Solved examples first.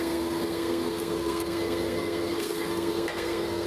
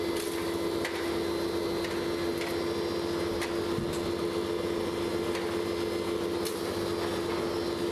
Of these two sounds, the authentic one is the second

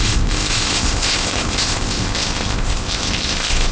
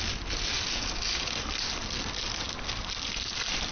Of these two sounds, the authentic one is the second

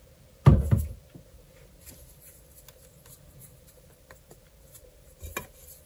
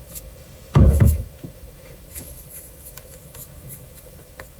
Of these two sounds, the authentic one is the first